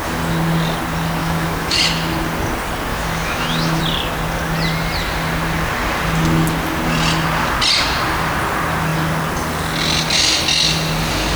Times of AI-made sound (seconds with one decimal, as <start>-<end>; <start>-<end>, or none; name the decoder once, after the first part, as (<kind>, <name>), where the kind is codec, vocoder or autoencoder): 1.2-1.8 (autoencoder, DAC-VAE); 2.9-3.8